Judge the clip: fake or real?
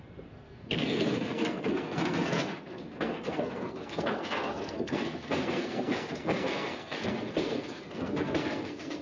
fake